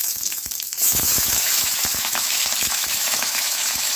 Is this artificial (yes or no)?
yes